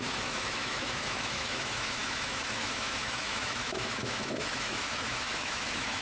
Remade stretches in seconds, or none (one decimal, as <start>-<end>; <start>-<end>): 0.0-6.0